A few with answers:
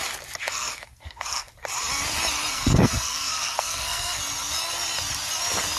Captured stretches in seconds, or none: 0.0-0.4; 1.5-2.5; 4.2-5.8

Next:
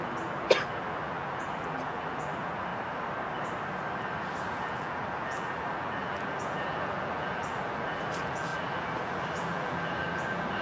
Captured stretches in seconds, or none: 2.7-4.5

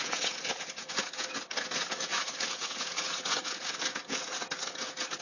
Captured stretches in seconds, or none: none

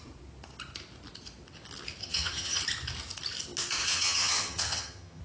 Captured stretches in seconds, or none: 0.0-2.0; 2.6-3.8